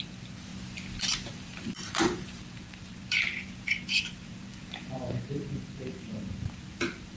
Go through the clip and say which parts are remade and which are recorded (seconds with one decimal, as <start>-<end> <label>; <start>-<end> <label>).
0.0-0.5 remade; 0.5-1.3 recorded; 1.3-7.2 remade